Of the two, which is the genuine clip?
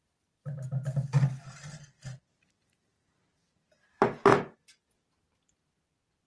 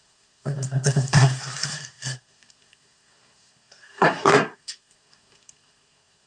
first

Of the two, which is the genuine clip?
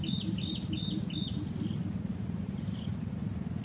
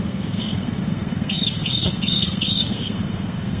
first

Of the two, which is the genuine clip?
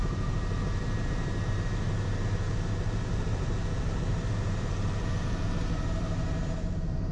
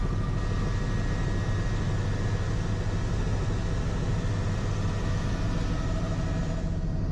second